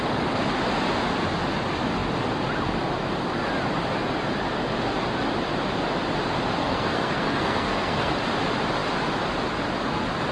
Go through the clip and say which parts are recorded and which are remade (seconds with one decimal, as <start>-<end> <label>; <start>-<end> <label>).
0.0-6.6 recorded; 6.6-8.1 remade; 8.1-10.3 recorded